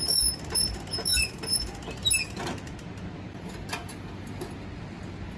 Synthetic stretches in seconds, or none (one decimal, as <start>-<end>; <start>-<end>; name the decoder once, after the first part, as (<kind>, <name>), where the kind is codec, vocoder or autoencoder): none